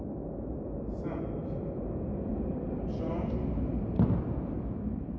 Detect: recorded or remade recorded